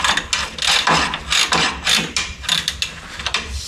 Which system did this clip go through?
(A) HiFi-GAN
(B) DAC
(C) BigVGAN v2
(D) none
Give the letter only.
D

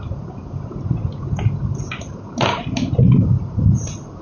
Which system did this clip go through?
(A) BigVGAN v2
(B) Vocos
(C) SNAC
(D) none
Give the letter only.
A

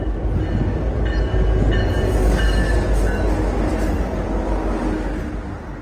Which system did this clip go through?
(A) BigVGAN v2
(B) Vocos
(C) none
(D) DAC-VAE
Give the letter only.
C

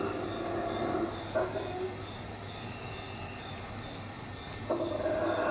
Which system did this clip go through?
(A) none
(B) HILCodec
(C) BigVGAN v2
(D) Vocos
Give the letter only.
A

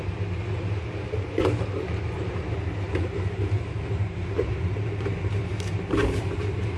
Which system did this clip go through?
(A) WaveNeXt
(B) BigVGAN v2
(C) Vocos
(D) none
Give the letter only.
B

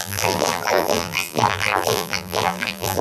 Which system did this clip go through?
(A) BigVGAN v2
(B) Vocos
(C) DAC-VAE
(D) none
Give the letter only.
A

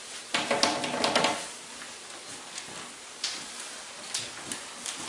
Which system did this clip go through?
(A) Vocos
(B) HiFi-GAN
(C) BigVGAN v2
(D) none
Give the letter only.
D